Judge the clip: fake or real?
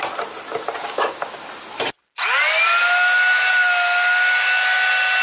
real